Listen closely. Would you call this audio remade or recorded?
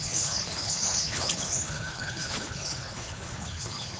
remade